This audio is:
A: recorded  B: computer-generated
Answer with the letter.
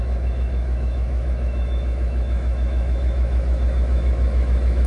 B